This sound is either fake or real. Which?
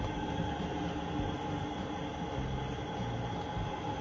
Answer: real